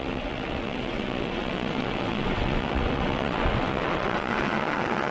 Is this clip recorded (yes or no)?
no